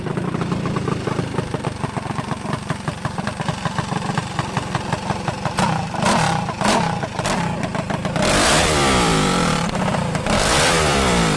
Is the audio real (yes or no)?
no